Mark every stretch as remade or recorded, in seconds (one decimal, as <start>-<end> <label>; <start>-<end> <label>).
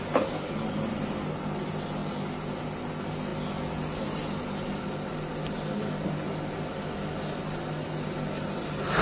0.0-9.0 recorded